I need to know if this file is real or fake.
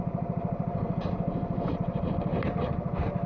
real